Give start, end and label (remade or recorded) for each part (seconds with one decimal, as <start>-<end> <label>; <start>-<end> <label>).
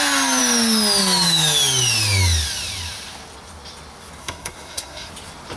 0.0-4.2 recorded; 4.2-5.1 remade; 5.1-5.6 recorded